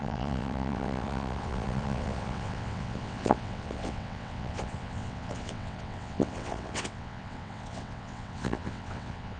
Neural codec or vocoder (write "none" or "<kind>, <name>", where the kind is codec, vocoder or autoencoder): vocoder, WaveNeXt